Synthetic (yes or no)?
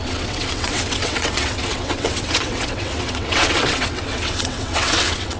yes